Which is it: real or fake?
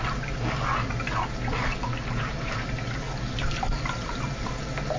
real